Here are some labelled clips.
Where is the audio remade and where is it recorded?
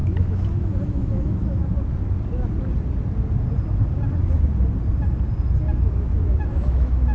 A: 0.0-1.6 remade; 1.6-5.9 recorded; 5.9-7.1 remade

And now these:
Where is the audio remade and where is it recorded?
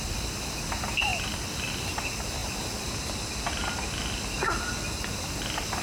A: 0.0-5.8 recorded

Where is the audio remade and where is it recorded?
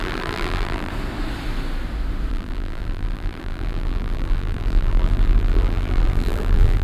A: 0.0-0.9 remade; 0.9-2.3 recorded; 2.3-6.8 remade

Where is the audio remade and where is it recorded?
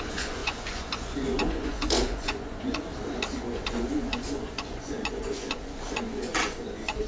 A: 0.0-2.9 remade; 2.9-3.4 recorded; 3.4-7.1 remade